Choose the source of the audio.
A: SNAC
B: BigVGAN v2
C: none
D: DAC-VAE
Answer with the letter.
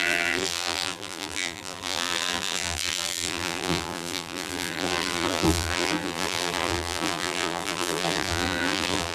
B